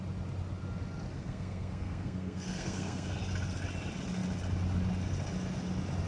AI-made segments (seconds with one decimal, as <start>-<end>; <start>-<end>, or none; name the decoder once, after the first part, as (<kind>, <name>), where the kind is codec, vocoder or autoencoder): 1.1-3.2 (codec, SNAC)